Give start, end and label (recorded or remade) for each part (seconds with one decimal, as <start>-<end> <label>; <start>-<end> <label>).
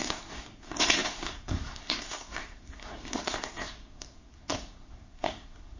0.0-5.8 remade